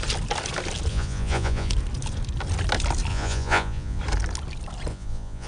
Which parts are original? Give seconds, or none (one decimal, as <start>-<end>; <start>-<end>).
0.0-0.9; 1.7-3.1; 4.0-4.9